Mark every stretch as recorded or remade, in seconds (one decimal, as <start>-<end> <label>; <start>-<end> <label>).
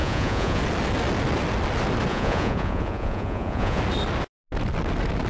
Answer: 0.0-0.6 remade; 0.6-2.1 recorded; 2.1-3.8 remade; 3.8-5.3 recorded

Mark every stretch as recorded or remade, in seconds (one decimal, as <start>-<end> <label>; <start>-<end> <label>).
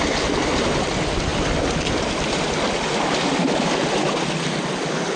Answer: 0.0-5.2 recorded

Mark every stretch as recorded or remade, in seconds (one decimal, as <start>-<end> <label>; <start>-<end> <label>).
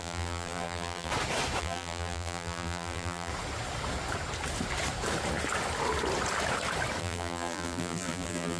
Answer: 0.0-1.1 remade; 1.1-1.6 recorded; 1.6-3.3 remade; 3.3-7.0 recorded; 7.0-8.6 remade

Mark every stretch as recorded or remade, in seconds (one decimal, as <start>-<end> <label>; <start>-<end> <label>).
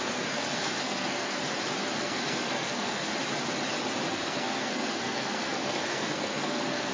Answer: 0.0-1.4 remade; 1.4-2.0 recorded; 2.0-3.1 remade; 3.1-4.1 recorded; 4.1-6.9 remade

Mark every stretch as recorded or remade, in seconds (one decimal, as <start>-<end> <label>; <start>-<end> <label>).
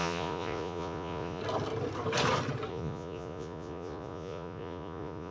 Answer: 0.0-1.4 remade; 1.4-2.7 recorded; 2.7-5.3 remade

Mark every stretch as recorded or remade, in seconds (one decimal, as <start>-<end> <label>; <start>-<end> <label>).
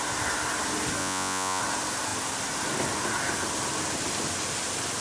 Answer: 0.0-1.0 recorded; 1.0-1.6 remade; 1.6-5.0 recorded